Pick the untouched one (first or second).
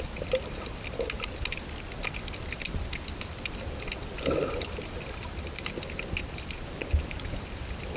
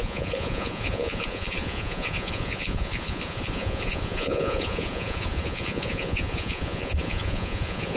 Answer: first